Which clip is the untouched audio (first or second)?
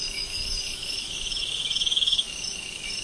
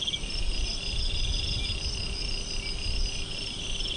second